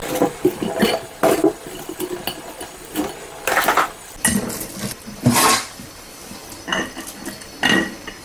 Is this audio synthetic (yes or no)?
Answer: no